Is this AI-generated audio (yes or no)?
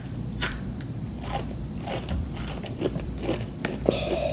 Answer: yes